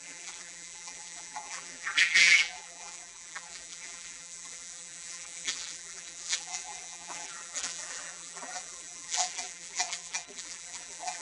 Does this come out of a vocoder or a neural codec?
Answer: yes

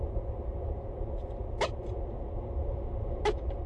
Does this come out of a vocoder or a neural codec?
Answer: no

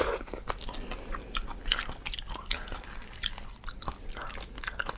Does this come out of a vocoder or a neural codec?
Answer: no